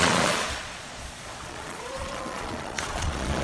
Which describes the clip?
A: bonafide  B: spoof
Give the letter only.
B